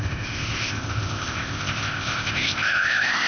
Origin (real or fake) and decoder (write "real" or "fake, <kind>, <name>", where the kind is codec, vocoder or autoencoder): fake, codec, ZipCodec